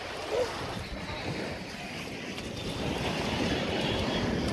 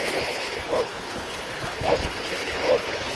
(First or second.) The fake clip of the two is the second